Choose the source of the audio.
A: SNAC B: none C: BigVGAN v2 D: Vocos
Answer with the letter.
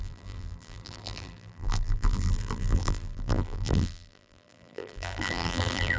C